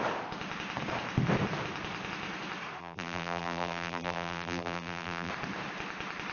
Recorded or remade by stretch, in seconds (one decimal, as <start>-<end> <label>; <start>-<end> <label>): 0.0-2.8 recorded; 2.8-5.3 remade; 5.3-6.3 recorded